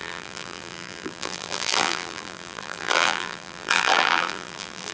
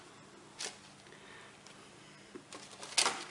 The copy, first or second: first